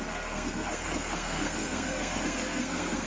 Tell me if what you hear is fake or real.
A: fake